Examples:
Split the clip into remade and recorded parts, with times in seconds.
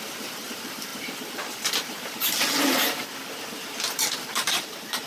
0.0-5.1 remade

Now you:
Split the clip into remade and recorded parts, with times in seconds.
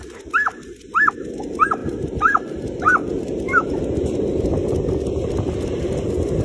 0.0-1.8 recorded; 1.8-3.7 remade; 3.7-6.4 recorded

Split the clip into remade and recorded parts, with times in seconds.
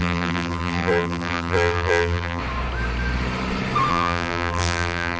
0.0-2.4 remade; 2.4-3.9 recorded; 3.9-5.2 remade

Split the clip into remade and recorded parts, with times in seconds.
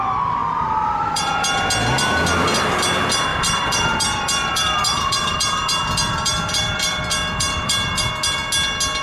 0.0-0.4 recorded; 0.4-1.6 remade; 1.6-3.3 recorded; 3.3-8.1 remade; 8.1-9.0 recorded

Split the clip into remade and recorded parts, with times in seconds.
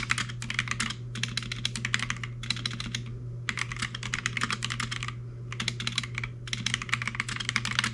0.0-7.9 recorded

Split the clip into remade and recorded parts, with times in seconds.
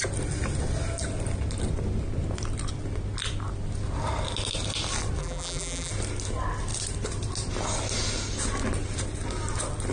0.0-5.2 recorded; 5.2-5.9 remade; 5.9-9.9 recorded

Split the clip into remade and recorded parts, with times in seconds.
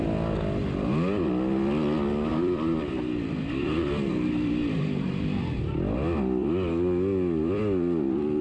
0.0-2.3 recorded; 2.3-5.6 remade; 5.6-6.4 recorded; 6.4-7.6 remade; 7.6-8.4 recorded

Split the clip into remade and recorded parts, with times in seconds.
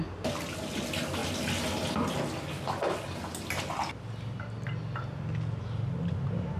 0.0-6.6 recorded